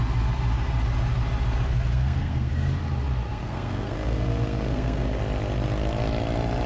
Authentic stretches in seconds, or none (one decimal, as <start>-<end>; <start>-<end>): 0.0-1.9; 2.5-3.3; 5.2-6.7